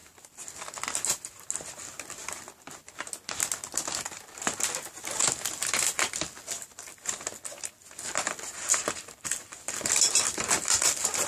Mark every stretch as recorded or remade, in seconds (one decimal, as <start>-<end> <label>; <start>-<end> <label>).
0.0-11.3 recorded